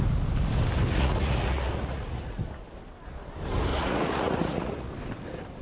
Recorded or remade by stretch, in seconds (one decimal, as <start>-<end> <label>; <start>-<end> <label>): 0.0-0.9 recorded; 0.9-2.4 remade; 2.4-3.7 recorded; 3.7-4.9 remade; 4.9-5.6 recorded